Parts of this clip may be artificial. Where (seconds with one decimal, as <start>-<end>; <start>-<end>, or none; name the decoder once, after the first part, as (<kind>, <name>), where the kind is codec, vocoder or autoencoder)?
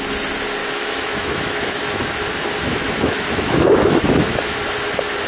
0.6-1.8 (autoencoder, DAC-VAE); 2.6-4.6